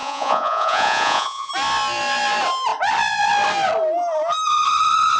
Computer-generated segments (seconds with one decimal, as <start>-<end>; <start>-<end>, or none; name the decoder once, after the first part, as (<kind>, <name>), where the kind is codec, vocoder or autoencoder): 0.0-1.5 (vocoder, Vocos)